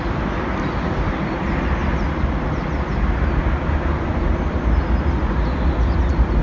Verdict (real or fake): real